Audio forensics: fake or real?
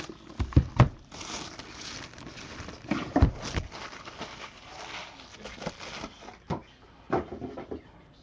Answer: real